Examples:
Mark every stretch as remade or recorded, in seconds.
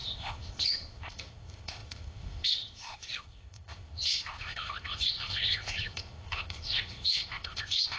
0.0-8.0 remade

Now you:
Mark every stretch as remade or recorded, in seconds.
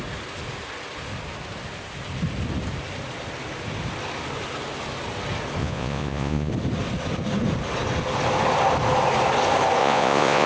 0.0-5.6 recorded; 5.6-6.5 remade; 6.5-9.8 recorded; 9.8-10.5 remade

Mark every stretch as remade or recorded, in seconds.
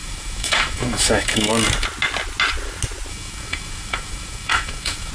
0.0-1.5 remade; 1.5-3.1 recorded; 3.1-5.1 remade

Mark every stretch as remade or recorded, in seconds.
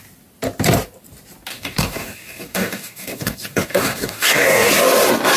0.0-1.5 recorded; 1.5-4.7 remade; 4.7-5.4 recorded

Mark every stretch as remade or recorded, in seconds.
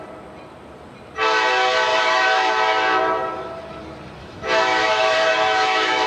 0.0-1.9 recorded; 1.9-2.5 remade; 2.5-4.2 recorded; 4.2-6.1 remade